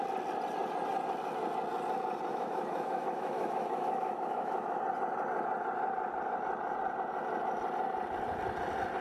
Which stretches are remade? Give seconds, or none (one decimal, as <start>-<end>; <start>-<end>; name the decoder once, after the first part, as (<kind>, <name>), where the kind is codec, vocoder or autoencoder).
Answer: 2.3-4.8 (autoencoder, DAC-VAE)